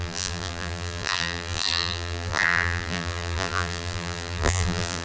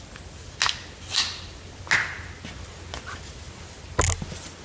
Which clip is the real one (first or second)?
second